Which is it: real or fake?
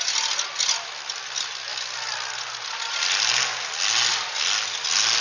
real